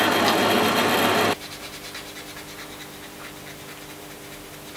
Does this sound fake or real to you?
real